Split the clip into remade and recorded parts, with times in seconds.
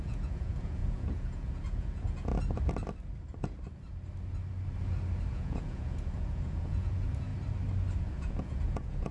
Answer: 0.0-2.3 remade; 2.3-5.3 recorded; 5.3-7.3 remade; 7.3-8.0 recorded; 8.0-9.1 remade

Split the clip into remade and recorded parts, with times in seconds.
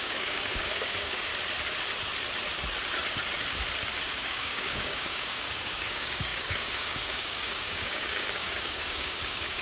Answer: 0.0-1.3 remade; 1.3-4.1 recorded; 4.1-9.6 remade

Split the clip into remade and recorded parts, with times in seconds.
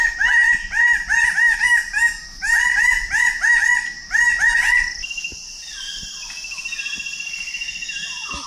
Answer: 0.0-4.3 recorded; 4.3-5.0 remade; 5.0-6.0 recorded; 6.0-8.5 remade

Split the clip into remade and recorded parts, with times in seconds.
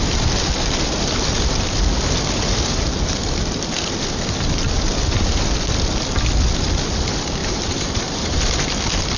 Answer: 0.0-7.4 recorded; 7.4-8.4 remade; 8.4-9.2 recorded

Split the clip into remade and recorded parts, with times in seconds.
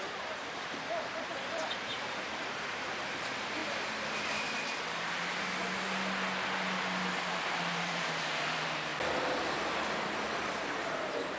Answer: 0.0-3.6 remade; 3.6-7.3 recorded; 7.3-8.9 remade; 8.9-9.7 recorded; 9.7-11.4 remade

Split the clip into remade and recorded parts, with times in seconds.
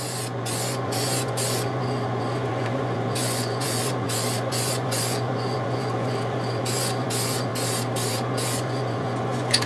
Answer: 0.0-7.5 remade; 7.5-8.1 recorded; 8.1-9.7 remade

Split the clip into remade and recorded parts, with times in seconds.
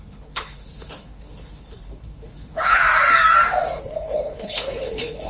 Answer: 0.0-2.8 remade; 2.8-3.8 recorded; 3.8-5.3 remade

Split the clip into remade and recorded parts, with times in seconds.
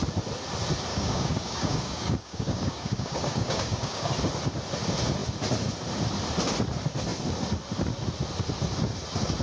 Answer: 0.0-0.9 recorded; 0.9-4.1 remade; 4.1-9.4 recorded